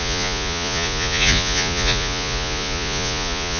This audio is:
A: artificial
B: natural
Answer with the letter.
A